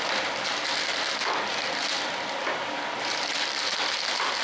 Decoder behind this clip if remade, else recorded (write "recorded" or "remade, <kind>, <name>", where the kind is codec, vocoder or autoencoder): recorded